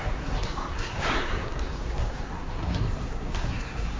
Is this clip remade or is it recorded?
remade